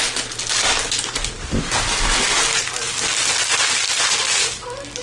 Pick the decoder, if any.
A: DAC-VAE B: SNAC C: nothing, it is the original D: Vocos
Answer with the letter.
C